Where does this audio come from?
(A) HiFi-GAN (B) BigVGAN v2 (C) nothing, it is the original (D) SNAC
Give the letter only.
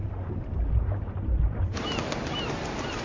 C